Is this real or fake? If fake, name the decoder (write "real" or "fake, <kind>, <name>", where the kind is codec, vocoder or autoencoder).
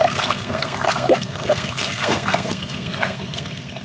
fake, codec, SNAC